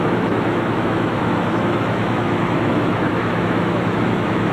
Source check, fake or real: fake